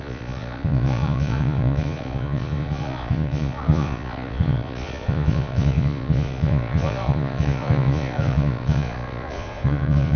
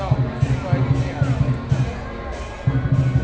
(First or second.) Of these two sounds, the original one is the second